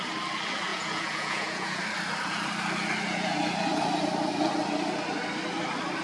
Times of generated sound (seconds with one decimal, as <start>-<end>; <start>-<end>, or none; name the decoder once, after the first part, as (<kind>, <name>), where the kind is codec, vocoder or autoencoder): 0.7-1.8 (vocoder, Vocos)